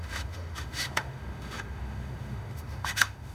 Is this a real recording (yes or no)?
no